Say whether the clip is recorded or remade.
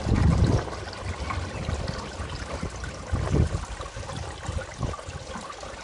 recorded